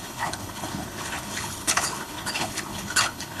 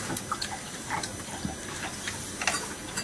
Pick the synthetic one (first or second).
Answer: first